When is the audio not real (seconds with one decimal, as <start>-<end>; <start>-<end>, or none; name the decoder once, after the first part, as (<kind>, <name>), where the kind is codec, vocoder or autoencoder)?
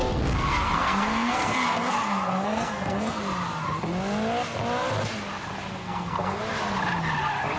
0.0-3.2 (codec, SNAC); 5.8-6.4